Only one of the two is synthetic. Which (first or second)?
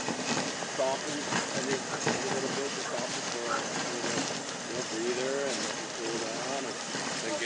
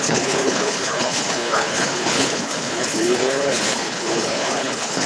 second